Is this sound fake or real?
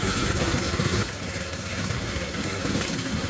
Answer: fake